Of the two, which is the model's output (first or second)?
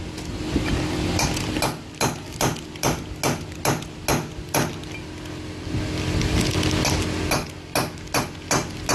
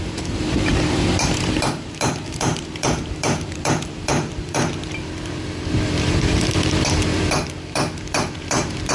second